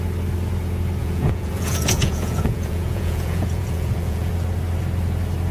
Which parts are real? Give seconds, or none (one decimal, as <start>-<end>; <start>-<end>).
0.0-1.0; 4.3-5.5